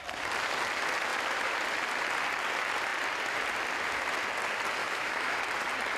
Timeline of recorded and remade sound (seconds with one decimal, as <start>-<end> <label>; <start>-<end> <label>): 0.0-4.8 recorded; 4.8-5.4 remade; 5.4-6.0 recorded